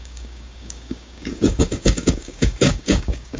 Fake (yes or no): yes